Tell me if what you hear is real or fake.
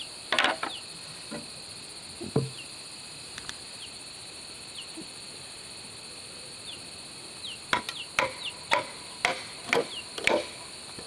real